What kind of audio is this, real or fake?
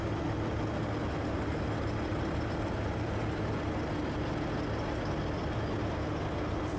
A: real